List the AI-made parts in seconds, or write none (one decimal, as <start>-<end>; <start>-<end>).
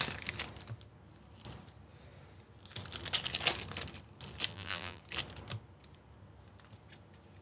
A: 4.5-5.0